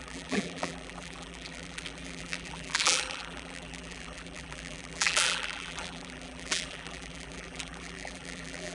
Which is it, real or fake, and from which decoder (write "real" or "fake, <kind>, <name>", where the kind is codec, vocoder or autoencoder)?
fake, vocoder, BigVGAN v2